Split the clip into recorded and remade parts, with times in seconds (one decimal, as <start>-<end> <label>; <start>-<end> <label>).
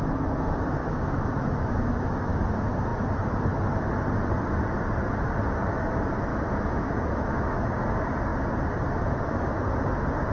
0.0-0.8 recorded; 0.8-2.4 remade; 2.4-6.3 recorded; 6.3-7.7 remade; 7.7-10.3 recorded